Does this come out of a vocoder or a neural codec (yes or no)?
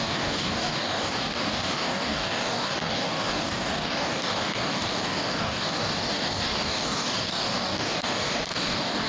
yes